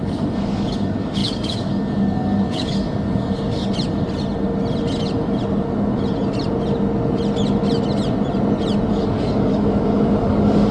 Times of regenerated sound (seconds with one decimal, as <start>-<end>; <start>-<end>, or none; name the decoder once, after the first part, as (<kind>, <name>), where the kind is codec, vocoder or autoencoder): 0.0-3.6 (codec, DAC); 8.9-10.7